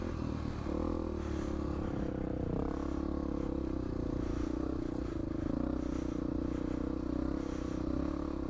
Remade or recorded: recorded